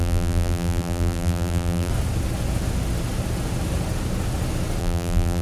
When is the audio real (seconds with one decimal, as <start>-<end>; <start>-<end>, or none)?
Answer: 1.9-4.8